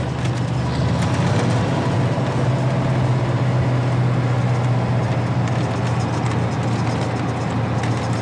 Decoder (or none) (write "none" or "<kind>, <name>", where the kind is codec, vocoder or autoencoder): none